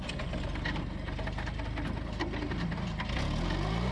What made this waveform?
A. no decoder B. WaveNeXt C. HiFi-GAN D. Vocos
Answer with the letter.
A